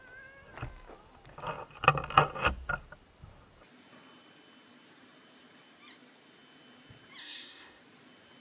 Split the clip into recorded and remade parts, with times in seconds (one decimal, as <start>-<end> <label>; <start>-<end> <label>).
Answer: 0.0-7.2 recorded; 7.2-7.8 remade; 7.8-8.4 recorded